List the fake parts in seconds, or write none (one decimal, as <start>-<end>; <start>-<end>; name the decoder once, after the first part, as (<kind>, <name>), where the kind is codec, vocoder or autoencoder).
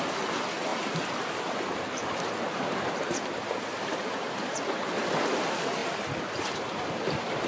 0.7-4.6 (vocoder, BigVGAN v2); 5.8-7.5